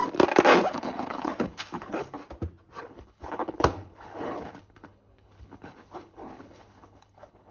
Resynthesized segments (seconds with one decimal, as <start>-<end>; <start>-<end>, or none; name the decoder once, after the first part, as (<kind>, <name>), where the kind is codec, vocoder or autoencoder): 0.7-2.2 (codec, HILCodec); 2.8-7.5